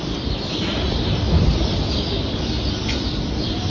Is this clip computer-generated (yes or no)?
no